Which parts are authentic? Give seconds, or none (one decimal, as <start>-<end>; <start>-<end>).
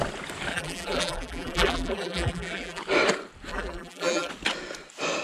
0.0-0.5; 2.8-3.5; 4.3-5.2